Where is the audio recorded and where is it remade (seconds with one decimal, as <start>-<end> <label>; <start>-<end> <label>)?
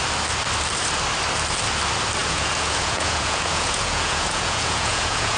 0.0-2.2 recorded; 2.2-5.4 remade